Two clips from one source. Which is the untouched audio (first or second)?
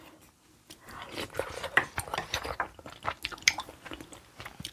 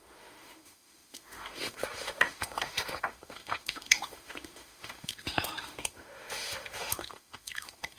first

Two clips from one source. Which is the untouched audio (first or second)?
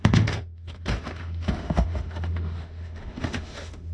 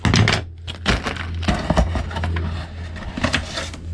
second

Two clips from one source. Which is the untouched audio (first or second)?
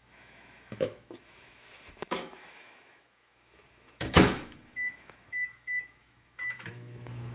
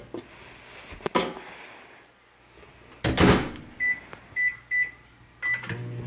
second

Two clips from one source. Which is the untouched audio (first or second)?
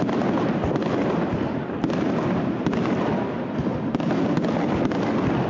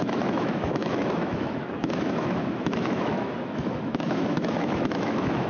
first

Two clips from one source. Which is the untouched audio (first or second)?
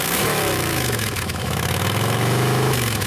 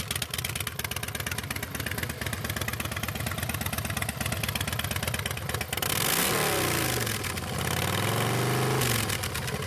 second